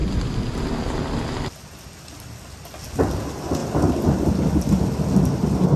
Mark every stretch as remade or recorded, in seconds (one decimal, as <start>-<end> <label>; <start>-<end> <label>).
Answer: 0.0-5.8 recorded